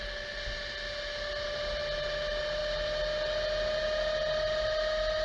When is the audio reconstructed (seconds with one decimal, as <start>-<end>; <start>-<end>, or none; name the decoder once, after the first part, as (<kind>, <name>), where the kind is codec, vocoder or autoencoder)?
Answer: none